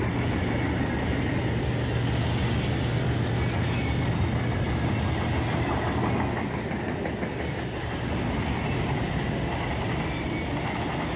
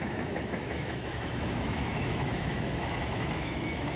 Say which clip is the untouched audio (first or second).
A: first